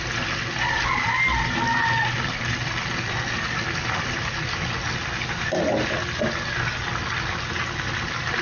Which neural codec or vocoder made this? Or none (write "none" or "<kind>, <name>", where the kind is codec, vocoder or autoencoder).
none